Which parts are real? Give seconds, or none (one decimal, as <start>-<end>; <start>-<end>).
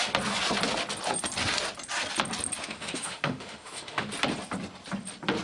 0.0-2.6; 4.1-5.4